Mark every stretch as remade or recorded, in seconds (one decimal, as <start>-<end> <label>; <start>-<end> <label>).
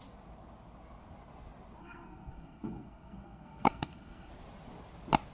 0.0-1.8 recorded; 1.8-4.3 remade; 4.3-5.3 recorded